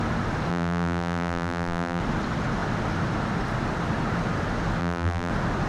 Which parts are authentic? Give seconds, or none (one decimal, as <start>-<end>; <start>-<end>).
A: 0.0-0.5; 2.0-4.8; 5.3-5.7